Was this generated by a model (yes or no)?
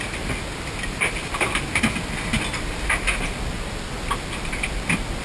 no